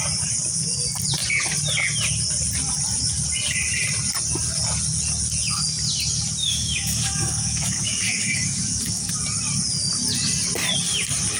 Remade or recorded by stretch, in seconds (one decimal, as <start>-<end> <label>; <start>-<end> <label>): 0.0-6.4 recorded; 6.4-9.1 remade; 9.1-11.4 recorded